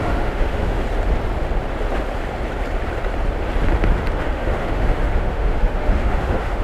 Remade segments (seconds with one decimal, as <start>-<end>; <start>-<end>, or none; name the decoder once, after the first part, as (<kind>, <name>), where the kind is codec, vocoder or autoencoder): 0.0-0.8 (autoencoder, DAC-VAE); 4.2-6.6